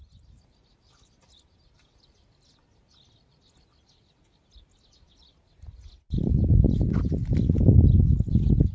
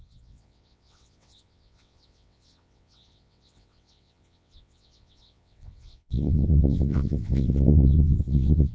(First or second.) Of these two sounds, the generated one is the second